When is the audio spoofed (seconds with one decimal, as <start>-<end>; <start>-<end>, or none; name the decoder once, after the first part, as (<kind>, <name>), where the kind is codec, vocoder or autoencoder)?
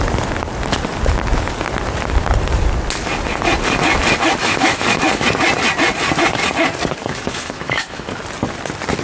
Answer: 4.4-5.2 (autoencoder, DAC-VAE); 7.0-8.2